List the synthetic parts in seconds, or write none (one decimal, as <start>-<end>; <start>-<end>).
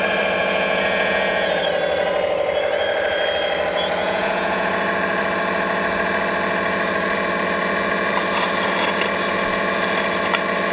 0.4-1.6; 4.0-4.7